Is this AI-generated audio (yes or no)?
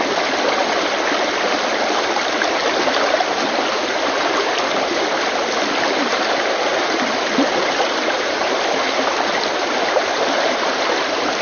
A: no